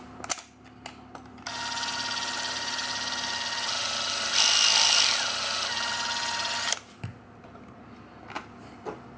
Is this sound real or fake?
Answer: real